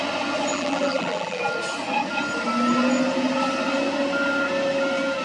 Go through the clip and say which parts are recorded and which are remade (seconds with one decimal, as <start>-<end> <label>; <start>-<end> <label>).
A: 0.0-0.5 recorded; 0.5-1.4 remade; 1.4-5.2 recorded